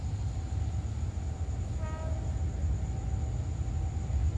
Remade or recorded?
recorded